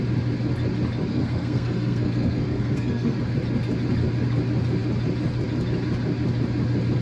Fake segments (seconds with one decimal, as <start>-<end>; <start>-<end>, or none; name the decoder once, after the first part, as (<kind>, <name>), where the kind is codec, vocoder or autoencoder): 1.1-3.2 (codec, SNAC)